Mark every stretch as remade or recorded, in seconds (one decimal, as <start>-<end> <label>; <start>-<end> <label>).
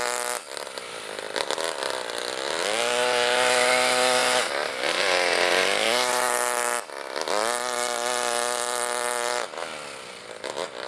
0.0-10.9 recorded